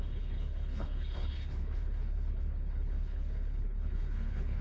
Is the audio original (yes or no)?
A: no